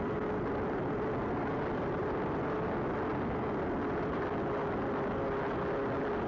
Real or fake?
real